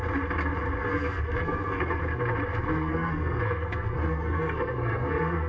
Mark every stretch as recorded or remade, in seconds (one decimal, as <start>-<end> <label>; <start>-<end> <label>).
0.0-0.8 recorded; 0.8-2.0 remade; 2.0-2.5 recorded; 2.5-5.5 remade